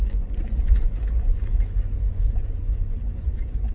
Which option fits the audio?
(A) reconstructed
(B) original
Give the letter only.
A